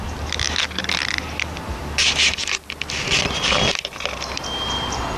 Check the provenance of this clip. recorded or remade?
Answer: recorded